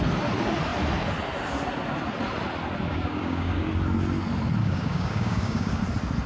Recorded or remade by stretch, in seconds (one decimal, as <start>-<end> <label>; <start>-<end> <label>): 0.0-2.9 recorded; 2.9-3.7 remade; 3.7-4.6 recorded; 4.6-5.8 remade; 5.8-6.3 recorded

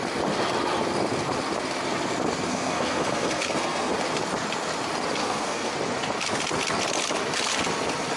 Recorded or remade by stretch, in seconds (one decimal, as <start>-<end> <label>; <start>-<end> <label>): 0.0-2.5 recorded; 2.5-3.9 remade; 3.9-5.2 recorded; 5.2-5.7 remade; 5.7-8.2 recorded

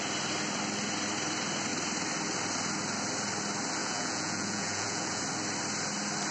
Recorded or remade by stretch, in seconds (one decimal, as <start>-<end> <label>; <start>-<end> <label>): 0.0-3.8 recorded; 3.8-5.2 remade; 5.2-6.3 recorded

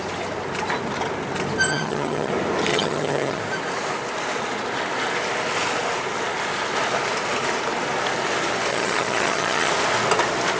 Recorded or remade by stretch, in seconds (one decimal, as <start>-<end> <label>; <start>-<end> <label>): 0.0-1.7 recorded; 1.7-2.3 remade; 2.3-2.7 recorded; 2.7-3.4 remade; 3.4-8.7 recorded; 8.7-9.7 remade; 9.7-10.6 recorded

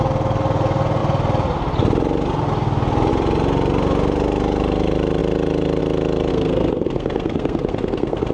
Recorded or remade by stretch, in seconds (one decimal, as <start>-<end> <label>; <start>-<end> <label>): 0.0-6.3 recorded; 6.3-8.3 remade

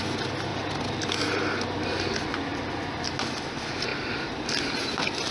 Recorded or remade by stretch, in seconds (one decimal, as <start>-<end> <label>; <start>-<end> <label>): 0.0-2.5 recorded; 2.5-3.1 remade; 3.1-3.9 recorded; 3.9-4.7 remade; 4.7-5.3 recorded

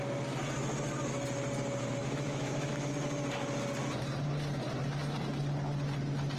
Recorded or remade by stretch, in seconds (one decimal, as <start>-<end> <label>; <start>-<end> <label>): 0.0-2.0 recorded; 2.0-2.9 remade; 2.9-6.4 recorded

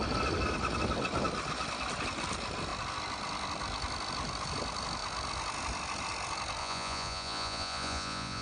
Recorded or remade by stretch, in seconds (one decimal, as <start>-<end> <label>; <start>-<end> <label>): 0.0-6.6 recorded; 6.6-8.4 remade